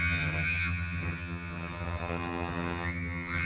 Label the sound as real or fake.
fake